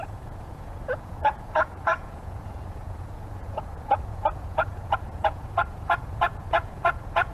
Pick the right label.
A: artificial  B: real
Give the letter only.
A